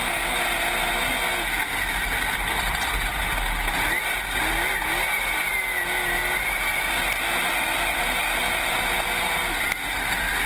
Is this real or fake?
real